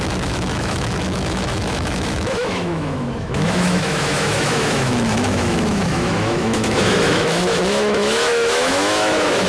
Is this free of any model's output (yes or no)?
no